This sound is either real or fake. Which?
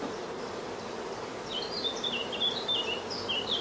fake